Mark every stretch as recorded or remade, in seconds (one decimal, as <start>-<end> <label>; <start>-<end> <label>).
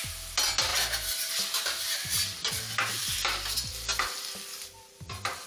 0.0-5.5 recorded